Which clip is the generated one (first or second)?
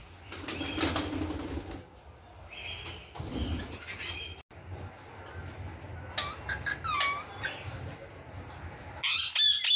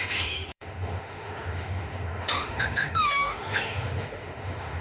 second